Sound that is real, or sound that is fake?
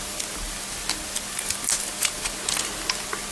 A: real